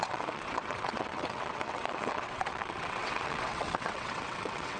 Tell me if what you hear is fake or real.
fake